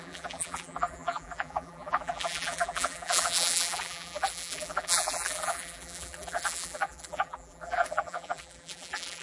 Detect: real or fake fake